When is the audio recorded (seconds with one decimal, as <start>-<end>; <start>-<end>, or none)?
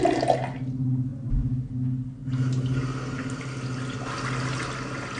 0.0-5.2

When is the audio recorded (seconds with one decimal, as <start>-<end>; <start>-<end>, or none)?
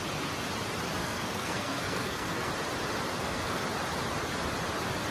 0.0-1.0; 2.5-3.1; 3.6-5.1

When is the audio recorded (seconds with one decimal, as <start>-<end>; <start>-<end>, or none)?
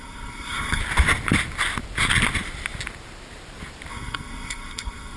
0.8-3.9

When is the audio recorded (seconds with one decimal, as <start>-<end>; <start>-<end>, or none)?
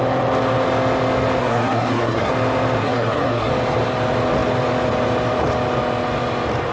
0.0-1.4; 2.3-2.8; 3.5-6.7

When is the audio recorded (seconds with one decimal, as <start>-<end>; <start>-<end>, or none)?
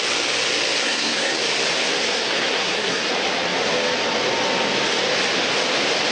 0.0-0.8; 1.4-2.0; 3.1-6.1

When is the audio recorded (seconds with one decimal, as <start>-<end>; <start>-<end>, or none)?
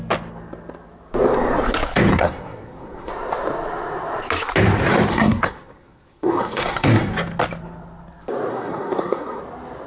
0.0-2.1; 3.1-5.1; 7.1-8.5; 9.4-9.9